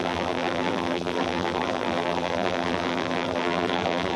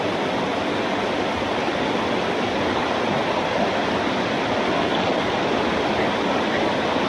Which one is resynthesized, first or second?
first